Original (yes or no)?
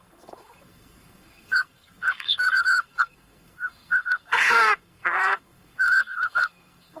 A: no